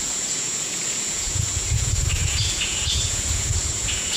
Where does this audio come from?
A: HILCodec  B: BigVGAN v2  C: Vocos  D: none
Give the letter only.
C